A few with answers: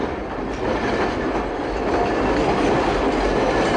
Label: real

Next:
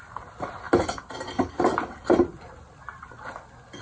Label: real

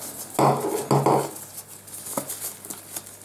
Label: real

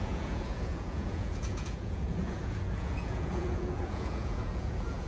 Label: fake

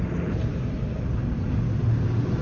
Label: real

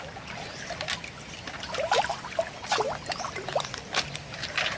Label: real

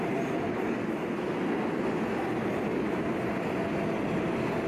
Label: real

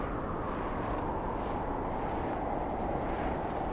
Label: real